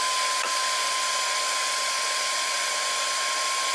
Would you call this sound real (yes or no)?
yes